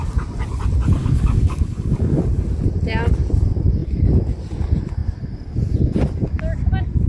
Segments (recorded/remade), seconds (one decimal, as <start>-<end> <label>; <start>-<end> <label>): 0.0-1.0 recorded; 1.0-2.2 remade; 2.2-7.1 recorded